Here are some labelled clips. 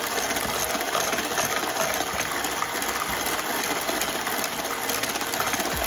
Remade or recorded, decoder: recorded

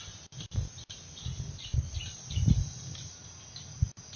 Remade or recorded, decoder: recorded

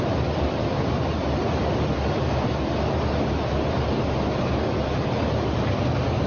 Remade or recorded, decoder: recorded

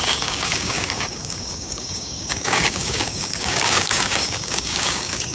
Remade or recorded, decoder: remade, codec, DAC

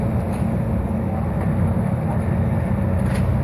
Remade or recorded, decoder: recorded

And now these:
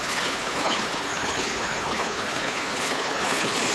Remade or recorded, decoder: remade, codec, HILCodec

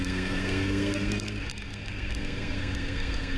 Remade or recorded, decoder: remade, codec, SNAC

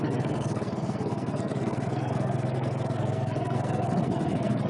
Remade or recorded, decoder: remade, codec, SNAC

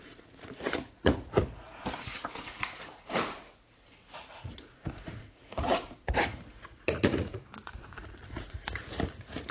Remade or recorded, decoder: remade, vocoder, Vocos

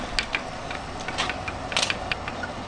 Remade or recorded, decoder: recorded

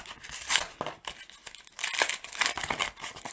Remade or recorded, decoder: recorded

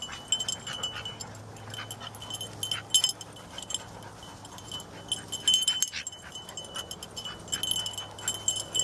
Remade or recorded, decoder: recorded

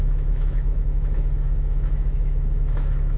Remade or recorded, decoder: remade, autoencoder, DAC-VAE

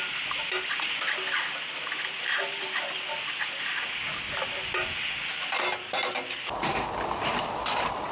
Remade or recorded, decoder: recorded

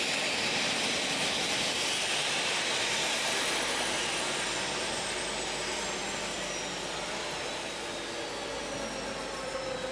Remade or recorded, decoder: recorded